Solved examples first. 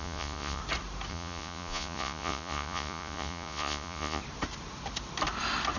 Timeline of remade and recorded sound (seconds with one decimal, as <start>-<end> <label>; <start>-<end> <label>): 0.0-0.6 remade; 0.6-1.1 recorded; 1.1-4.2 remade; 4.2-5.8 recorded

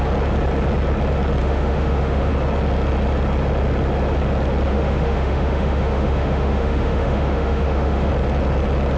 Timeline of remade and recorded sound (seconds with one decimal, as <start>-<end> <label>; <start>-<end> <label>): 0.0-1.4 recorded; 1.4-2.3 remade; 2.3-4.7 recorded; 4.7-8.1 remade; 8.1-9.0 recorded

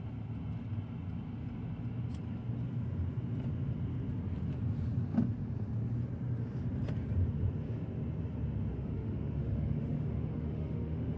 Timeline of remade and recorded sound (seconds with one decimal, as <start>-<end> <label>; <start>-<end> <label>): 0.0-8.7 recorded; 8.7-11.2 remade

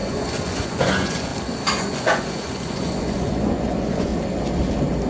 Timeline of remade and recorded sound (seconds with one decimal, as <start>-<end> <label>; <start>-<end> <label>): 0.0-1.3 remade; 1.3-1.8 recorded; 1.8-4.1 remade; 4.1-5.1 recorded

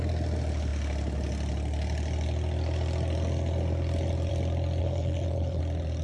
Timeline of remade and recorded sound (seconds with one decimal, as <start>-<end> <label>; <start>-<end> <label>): 0.0-4.8 recorded; 4.8-5.6 remade; 5.6-6.0 recorded

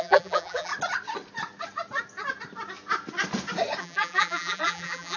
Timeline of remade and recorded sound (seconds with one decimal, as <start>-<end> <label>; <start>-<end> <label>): 0.0-0.7 remade; 0.7-3.8 recorded; 3.8-5.2 remade